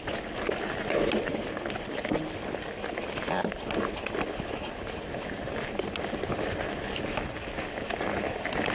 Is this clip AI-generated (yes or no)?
no